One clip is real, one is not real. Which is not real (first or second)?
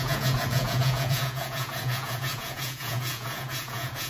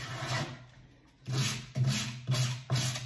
first